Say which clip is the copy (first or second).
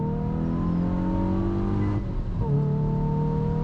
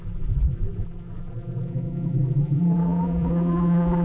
second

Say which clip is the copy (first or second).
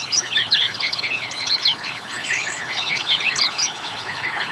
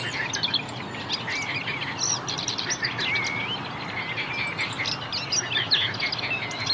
first